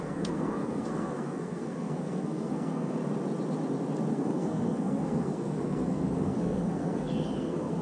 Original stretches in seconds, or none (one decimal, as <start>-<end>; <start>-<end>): 3.0-4.1